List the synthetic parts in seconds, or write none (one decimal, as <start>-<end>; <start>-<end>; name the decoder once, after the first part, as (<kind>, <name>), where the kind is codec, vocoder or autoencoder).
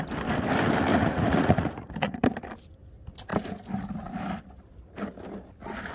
0.9-2.3 (vocoder, Vocos)